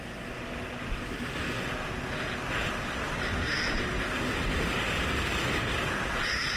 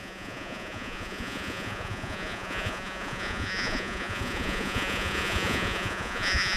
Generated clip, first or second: second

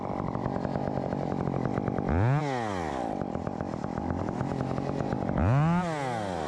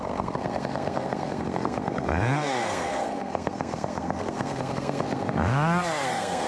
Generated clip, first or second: second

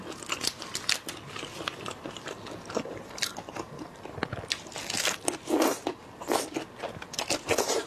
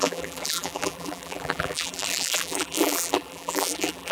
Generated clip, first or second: second